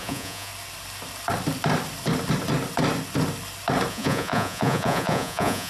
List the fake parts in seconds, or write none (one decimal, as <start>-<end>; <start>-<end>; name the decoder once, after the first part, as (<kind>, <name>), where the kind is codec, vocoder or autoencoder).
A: 0.0-0.5 (vocoder, Vocos); 3.9-5.7